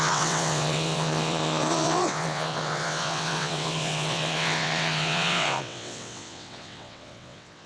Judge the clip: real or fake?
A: fake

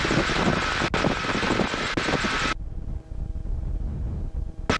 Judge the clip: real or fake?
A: real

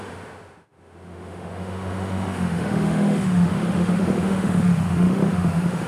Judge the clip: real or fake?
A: fake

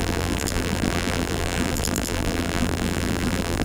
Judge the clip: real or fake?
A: fake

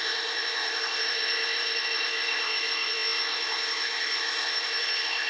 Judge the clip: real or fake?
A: fake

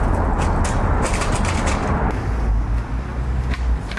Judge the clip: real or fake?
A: real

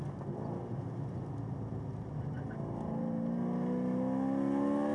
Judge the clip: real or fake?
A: real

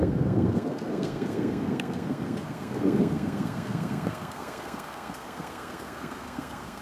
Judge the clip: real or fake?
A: fake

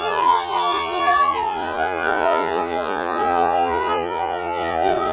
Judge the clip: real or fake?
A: fake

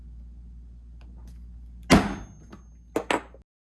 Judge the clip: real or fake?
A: real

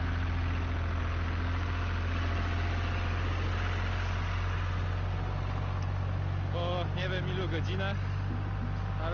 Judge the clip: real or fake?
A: real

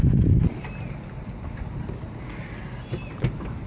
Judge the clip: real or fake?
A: real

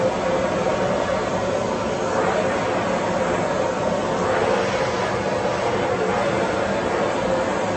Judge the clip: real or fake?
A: real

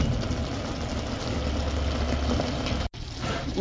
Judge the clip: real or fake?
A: real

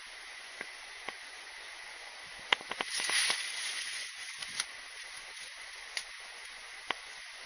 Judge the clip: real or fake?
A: fake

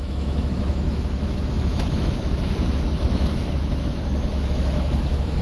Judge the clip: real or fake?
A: fake